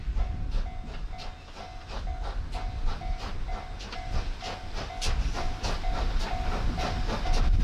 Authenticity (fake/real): real